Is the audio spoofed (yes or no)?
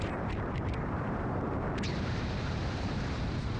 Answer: yes